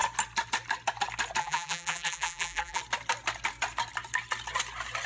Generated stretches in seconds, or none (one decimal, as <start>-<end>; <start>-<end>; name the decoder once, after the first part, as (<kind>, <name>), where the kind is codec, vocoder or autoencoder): 1.4-2.8 (vocoder, BigVGAN v2)